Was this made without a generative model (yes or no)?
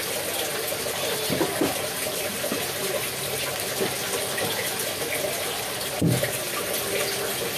yes